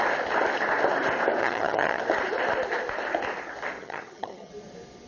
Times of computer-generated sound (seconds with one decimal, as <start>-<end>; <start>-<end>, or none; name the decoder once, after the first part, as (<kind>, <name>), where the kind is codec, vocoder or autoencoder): 1.4-2.0 (vocoder, HiFi-GAN); 3.8-4.5